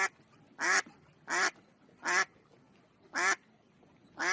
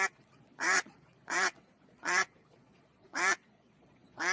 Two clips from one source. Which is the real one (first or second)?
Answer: first